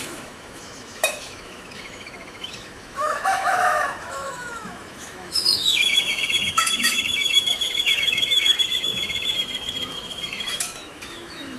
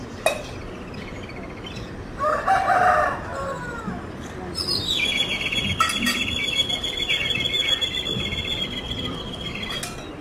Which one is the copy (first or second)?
first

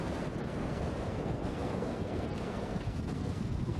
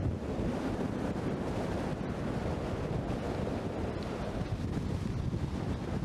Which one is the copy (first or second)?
first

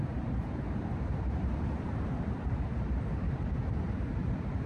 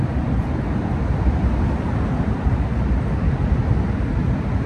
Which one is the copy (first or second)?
first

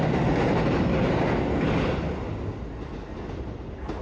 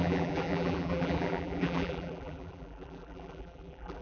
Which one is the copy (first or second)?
second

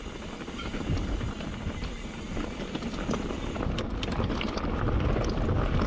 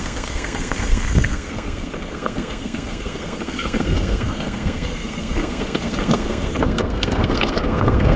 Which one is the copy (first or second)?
second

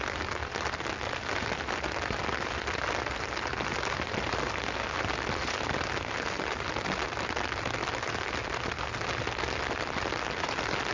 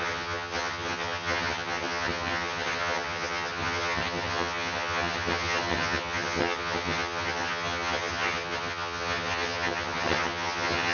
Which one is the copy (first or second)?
second